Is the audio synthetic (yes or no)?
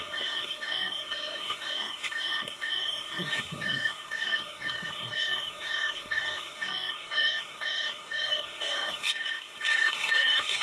yes